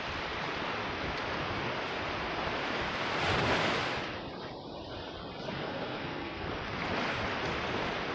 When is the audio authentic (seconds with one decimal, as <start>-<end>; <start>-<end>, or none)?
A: 0.0-5.6; 6.5-8.1